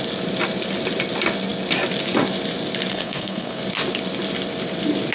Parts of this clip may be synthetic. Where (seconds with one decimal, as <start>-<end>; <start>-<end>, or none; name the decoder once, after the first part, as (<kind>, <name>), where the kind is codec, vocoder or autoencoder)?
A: 2.9-3.6 (codec, SNAC)